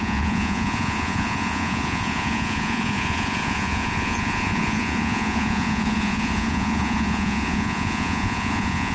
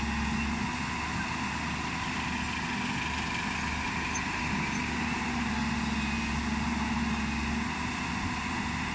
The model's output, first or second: first